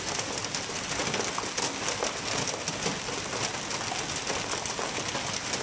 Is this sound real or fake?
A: real